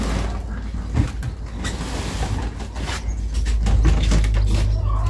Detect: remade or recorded recorded